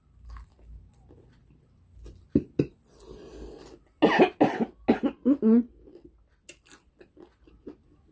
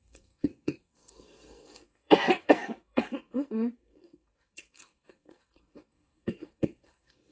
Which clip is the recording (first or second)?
first